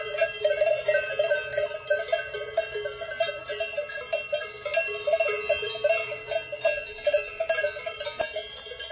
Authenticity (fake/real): real